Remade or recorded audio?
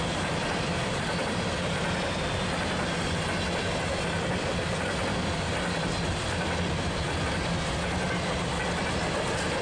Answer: recorded